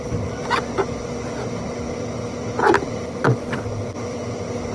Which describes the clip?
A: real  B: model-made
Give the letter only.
A